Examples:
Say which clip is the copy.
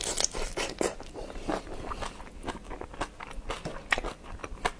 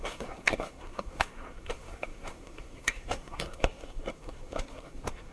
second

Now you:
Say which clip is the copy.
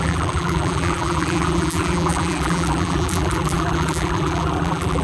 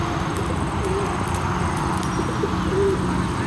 first